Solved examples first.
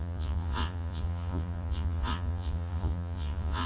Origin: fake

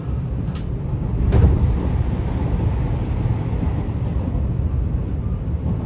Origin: real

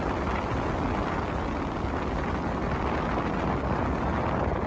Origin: real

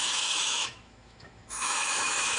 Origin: fake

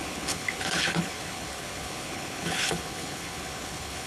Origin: fake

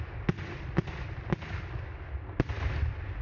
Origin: real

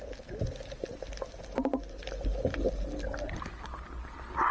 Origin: real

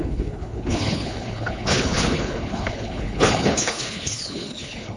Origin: fake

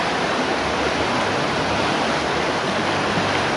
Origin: real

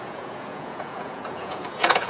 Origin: fake